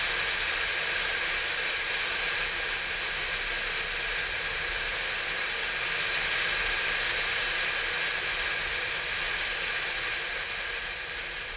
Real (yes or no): yes